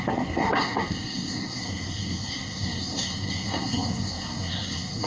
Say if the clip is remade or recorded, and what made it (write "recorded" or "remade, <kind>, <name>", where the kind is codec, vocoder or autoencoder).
remade, codec, SNAC